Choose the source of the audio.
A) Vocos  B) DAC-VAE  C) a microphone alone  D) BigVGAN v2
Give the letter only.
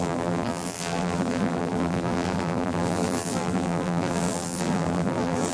D